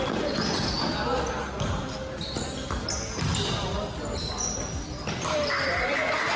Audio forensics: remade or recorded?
recorded